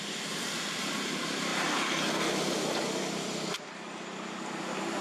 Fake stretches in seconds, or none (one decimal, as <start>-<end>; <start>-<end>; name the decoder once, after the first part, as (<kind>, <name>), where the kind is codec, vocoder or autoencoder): none